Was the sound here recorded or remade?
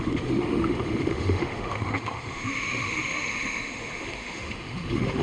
remade